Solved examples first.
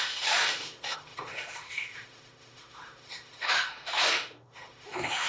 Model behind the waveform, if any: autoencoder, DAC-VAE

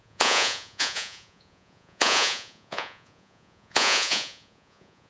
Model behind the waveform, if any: vocoder, Vocos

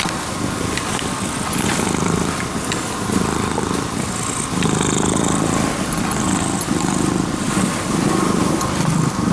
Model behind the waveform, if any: none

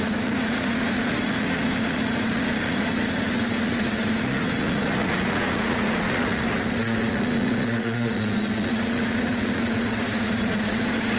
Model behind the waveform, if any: vocoder, Vocos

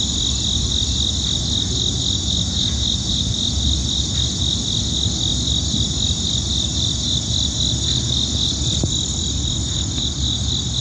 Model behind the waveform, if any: none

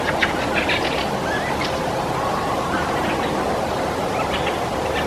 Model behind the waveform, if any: none